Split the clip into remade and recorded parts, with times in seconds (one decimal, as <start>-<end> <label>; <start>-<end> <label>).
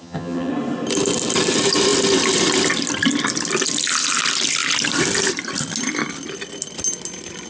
0.0-0.5 remade; 0.5-7.5 recorded